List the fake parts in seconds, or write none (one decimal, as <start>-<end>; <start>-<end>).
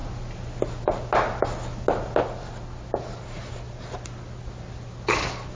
none